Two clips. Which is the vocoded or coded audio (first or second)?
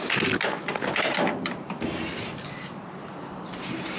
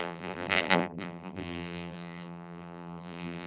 second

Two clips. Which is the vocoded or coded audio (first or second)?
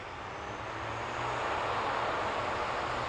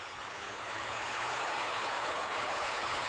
second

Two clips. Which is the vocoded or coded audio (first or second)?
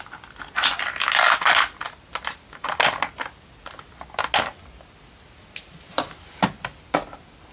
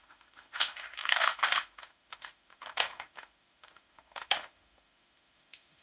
second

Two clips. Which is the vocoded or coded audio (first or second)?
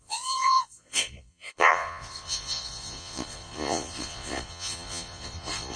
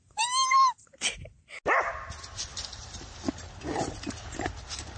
first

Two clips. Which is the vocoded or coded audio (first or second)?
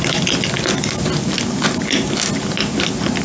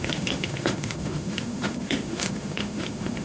second